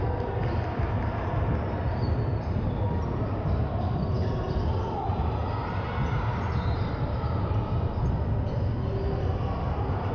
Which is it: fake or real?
real